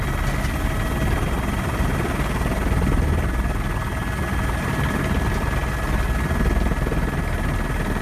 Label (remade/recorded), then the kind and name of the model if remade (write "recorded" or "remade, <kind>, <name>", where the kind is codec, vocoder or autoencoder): recorded